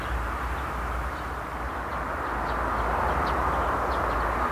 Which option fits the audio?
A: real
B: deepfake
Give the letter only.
A